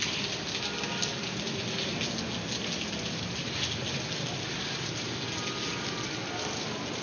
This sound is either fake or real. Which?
real